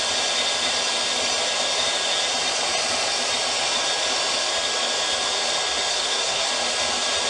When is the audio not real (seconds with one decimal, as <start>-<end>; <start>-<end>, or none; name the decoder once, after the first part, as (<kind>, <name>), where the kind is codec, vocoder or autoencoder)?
5.9-6.5 (codec, SNAC)